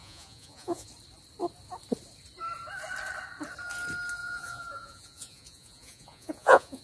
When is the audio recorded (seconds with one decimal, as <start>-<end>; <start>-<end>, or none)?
0.9-4.2